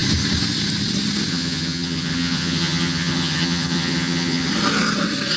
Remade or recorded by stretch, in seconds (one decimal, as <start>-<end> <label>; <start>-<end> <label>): 0.0-1.3 recorded; 1.3-4.5 remade; 4.5-5.4 recorded